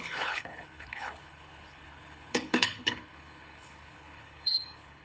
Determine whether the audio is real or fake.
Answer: fake